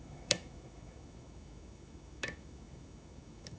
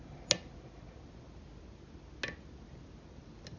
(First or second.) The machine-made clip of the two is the first